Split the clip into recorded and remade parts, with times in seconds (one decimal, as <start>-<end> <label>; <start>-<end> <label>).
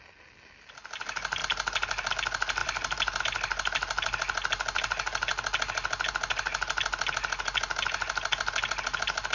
0.0-2.6 recorded; 2.6-3.2 remade; 3.2-9.3 recorded